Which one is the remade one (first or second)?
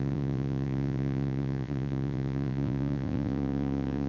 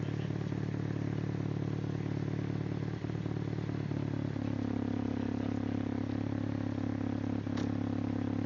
first